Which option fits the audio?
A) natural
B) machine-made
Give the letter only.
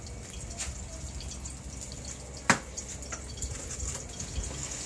A